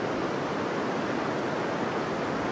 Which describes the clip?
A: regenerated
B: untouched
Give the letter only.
B